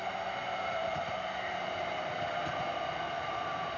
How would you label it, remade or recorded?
remade